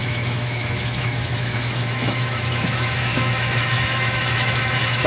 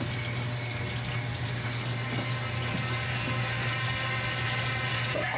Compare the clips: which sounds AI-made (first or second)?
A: first